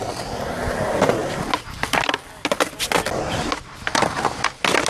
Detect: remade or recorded recorded